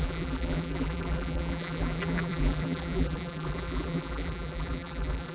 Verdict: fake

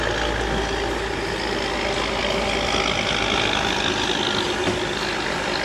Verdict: real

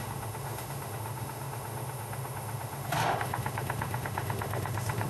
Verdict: fake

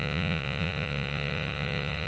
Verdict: fake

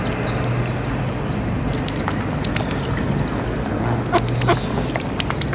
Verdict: real